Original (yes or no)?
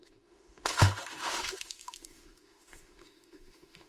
no